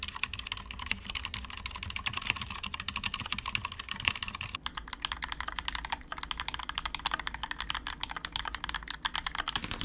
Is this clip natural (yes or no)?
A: yes